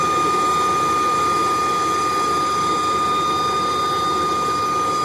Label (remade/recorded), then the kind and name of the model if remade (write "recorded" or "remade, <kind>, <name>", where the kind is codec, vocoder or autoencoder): recorded